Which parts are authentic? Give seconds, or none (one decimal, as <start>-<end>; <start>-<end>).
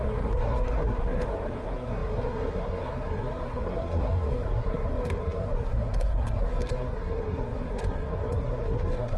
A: none